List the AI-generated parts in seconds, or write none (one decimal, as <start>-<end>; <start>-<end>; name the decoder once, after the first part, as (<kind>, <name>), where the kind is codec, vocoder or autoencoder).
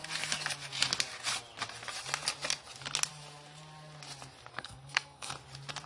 4.5-5.3 (codec, SNAC)